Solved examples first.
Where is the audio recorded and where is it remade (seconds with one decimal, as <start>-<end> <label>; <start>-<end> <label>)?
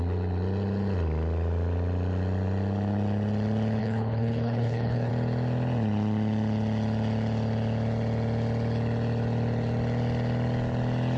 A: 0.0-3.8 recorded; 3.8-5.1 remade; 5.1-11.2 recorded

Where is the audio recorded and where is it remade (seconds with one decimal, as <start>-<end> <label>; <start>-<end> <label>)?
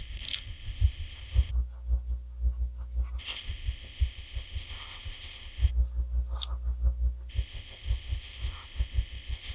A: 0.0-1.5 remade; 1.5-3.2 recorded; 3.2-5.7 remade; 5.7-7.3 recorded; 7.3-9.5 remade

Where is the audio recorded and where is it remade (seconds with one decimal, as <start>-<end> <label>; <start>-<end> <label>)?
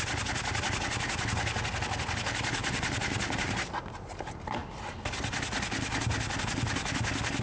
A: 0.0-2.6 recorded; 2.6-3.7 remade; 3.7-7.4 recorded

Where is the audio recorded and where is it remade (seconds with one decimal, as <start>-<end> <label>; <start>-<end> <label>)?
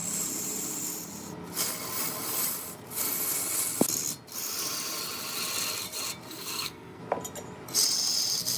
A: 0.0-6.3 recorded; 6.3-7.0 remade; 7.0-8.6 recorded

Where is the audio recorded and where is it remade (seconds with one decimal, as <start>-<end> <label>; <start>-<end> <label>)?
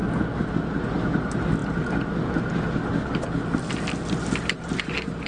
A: 0.0-5.3 recorded